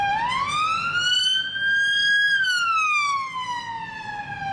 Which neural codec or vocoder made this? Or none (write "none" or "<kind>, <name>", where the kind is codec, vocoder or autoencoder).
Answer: none